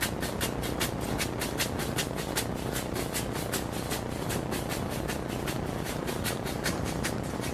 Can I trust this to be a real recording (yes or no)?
yes